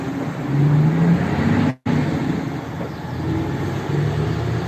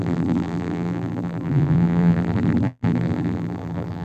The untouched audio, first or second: first